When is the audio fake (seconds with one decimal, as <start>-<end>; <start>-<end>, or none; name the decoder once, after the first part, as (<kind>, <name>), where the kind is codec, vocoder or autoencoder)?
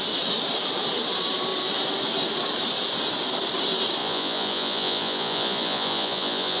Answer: 4.0-6.6 (vocoder, Vocos)